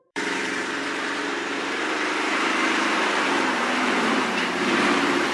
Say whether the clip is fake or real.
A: fake